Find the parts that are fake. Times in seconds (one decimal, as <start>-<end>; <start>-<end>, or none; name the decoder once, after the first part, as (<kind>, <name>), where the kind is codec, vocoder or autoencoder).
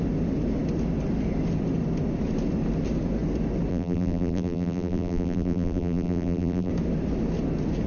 3.7-6.7 (vocoder, BigVGAN v2)